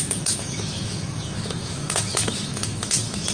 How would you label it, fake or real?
fake